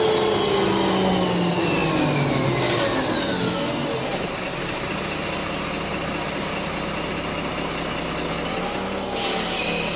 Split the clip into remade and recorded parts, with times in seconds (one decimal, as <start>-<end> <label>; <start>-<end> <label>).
0.0-10.0 recorded